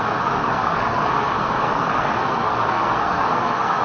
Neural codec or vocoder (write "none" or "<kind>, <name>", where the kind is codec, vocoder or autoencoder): codec, SNAC